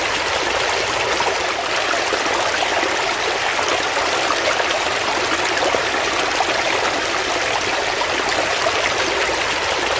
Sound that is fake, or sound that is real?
real